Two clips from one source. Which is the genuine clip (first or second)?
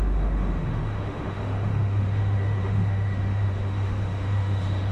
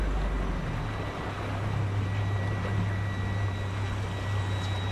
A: second